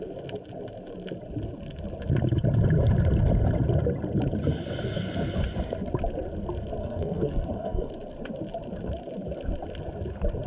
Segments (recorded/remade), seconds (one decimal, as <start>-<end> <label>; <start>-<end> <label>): 0.0-6.8 recorded; 6.8-7.9 remade; 7.9-10.5 recorded